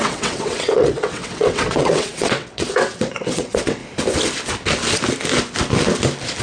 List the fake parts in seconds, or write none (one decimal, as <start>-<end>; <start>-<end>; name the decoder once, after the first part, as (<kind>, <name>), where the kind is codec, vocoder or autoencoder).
0.0-3.8 (vocoder, WaveNeXt)